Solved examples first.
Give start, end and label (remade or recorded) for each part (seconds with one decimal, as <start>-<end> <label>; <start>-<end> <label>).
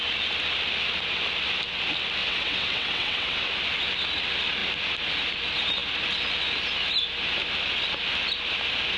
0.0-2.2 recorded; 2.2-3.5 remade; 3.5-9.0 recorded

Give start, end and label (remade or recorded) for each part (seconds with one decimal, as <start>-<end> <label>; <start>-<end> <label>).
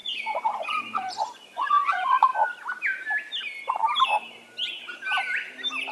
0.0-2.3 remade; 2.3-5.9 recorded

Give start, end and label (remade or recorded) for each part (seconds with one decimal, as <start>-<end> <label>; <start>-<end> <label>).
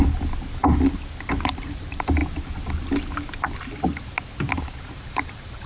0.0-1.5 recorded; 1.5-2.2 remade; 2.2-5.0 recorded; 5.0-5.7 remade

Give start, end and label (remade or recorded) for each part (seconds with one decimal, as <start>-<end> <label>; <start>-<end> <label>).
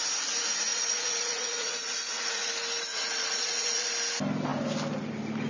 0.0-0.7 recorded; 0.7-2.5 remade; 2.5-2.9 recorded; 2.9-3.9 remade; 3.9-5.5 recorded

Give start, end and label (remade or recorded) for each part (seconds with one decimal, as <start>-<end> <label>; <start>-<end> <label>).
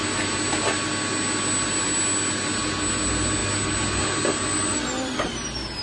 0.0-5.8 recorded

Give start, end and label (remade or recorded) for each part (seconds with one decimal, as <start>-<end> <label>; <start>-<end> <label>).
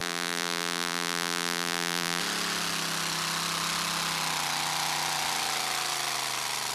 0.0-2.2 remade; 2.2-6.7 recorded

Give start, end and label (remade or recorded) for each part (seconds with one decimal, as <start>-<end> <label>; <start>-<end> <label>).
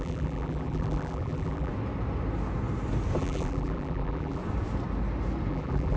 0.0-1.7 remade; 1.7-3.2 recorded; 3.2-4.4 remade; 4.4-5.5 recorded; 5.5-6.0 remade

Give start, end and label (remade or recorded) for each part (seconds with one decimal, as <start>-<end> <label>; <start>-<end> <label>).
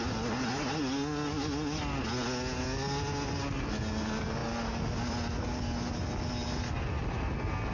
0.0-7.7 recorded